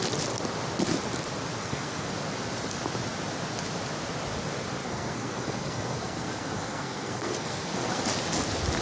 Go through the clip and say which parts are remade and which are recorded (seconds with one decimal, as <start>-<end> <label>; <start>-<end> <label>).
0.0-1.6 recorded; 1.6-2.1 remade; 2.1-4.8 recorded; 4.8-8.0 remade; 8.0-8.8 recorded